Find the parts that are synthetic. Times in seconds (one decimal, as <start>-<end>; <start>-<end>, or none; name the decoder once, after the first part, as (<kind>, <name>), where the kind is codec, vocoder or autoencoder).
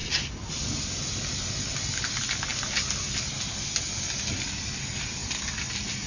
none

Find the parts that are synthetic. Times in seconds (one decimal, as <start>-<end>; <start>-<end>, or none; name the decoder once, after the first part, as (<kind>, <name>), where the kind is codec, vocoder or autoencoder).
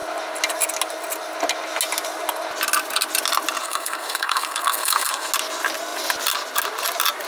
3.6-5.3 (codec, SNAC)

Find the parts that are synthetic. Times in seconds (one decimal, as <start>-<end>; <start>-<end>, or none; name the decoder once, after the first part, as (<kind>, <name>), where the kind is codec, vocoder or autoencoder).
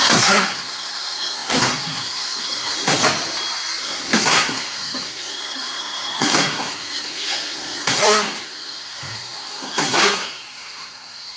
0.0-3.0 (codec, SNAC); 3.8-11.4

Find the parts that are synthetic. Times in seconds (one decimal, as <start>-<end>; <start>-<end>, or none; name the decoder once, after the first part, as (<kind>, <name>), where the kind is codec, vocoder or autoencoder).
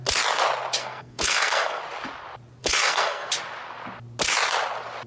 0.8-1.8 (codec, SNAC); 2.6-3.3